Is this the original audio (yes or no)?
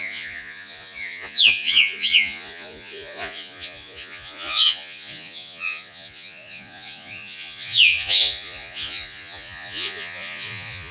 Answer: no